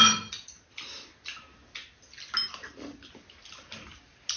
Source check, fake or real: real